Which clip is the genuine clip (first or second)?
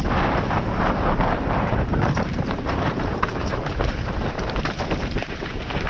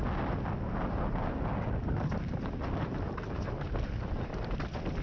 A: second